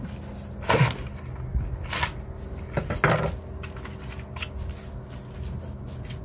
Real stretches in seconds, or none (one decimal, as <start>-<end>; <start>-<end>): 0.0-6.2